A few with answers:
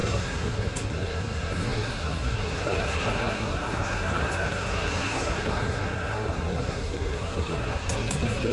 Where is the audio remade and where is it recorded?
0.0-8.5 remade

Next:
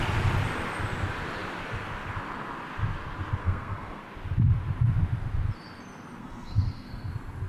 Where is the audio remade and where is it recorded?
0.0-3.4 recorded; 3.4-4.0 remade; 4.0-6.2 recorded; 6.2-7.1 remade; 7.1-7.5 recorded

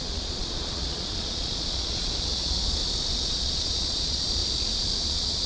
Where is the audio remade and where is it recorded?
0.0-2.8 remade; 2.8-3.3 recorded; 3.3-4.4 remade; 4.4-5.0 recorded; 5.0-5.5 remade

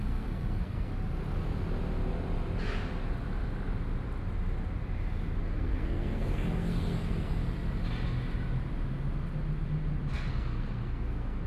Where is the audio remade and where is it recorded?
0.0-0.9 remade; 0.9-5.4 recorded; 5.4-7.4 remade; 7.4-10.1 recorded; 10.1-11.5 remade

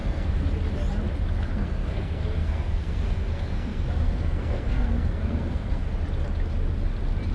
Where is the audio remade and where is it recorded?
0.0-0.5 remade; 0.5-1.5 recorded; 1.5-5.9 remade; 5.9-7.3 recorded